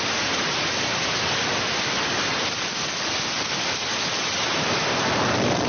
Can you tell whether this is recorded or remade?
recorded